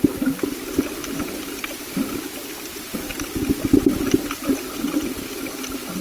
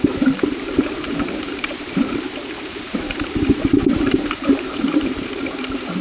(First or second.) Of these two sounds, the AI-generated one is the second